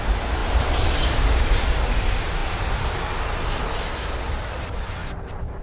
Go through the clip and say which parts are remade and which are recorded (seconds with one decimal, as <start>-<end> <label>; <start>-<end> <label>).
0.0-0.4 recorded; 0.4-1.4 remade; 1.4-5.0 recorded; 5.0-5.6 remade